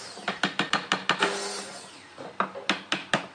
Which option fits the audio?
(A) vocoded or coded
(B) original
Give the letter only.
B